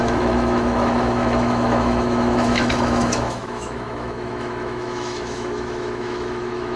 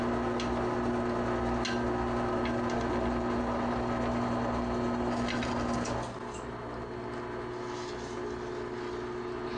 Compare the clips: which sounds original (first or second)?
second